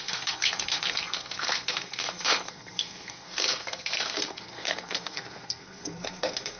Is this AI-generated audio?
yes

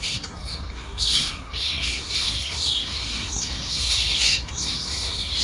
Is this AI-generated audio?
yes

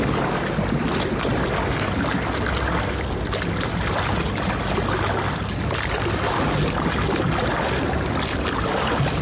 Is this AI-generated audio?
no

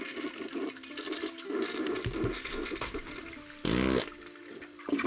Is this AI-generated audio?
no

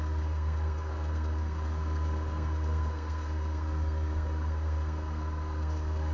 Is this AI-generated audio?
yes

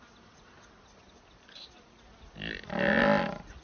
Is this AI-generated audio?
no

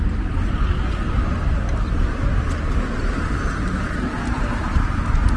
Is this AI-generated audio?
no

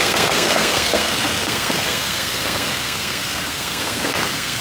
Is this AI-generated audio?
yes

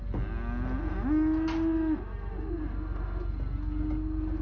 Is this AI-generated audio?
no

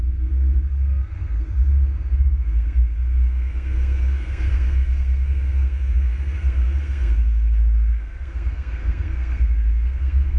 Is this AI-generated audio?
yes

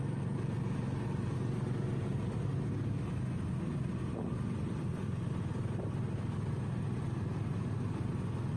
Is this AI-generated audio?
no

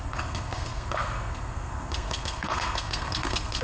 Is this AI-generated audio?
yes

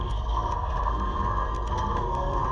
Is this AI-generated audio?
yes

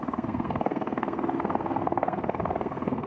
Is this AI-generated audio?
yes